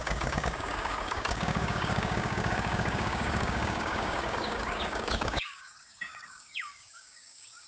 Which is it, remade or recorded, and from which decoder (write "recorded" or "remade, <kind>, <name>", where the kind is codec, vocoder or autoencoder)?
remade, codec, DAC